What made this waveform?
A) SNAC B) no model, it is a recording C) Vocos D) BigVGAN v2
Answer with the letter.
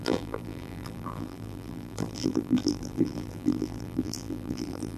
D